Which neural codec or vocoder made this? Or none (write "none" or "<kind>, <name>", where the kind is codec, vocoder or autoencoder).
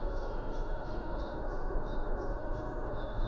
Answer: autoencoder, DAC-VAE